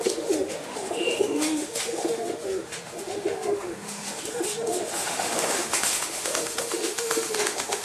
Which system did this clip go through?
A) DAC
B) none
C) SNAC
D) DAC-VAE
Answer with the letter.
D